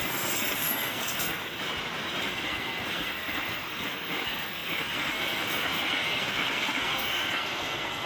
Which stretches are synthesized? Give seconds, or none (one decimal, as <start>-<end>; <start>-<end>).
0.0-1.4; 2.2-8.1

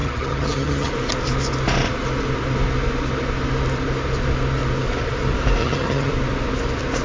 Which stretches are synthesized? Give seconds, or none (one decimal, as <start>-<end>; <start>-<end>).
0.0-0.9; 5.6-6.1

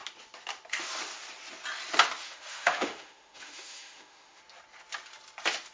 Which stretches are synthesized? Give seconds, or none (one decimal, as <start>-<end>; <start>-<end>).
2.2-4.4